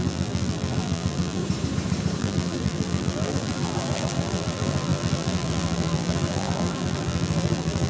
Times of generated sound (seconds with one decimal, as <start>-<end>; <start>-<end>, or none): 0.0-1.4; 2.2-7.9